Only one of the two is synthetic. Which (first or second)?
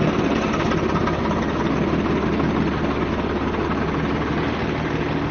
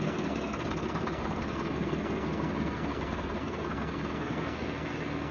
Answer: second